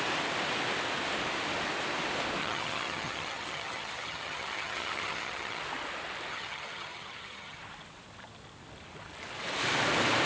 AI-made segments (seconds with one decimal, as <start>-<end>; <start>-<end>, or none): 2.4-5.6; 6.3-7.6